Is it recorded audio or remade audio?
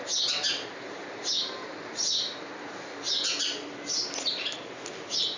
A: recorded